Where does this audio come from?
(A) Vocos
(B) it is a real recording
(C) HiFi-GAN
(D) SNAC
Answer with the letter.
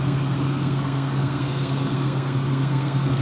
D